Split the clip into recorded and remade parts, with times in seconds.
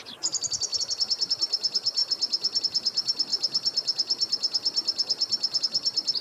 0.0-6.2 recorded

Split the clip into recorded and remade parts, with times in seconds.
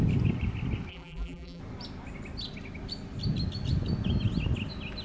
0.0-0.9 recorded; 0.9-1.6 remade; 1.6-5.0 recorded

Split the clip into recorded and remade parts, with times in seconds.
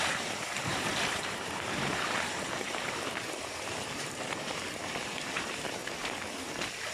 0.0-5.8 remade; 5.8-6.9 recorded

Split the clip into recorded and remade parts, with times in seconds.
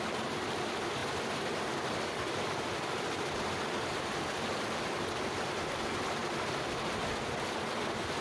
0.0-1.0 recorded; 1.0-4.8 remade; 4.8-6.2 recorded; 6.2-8.2 remade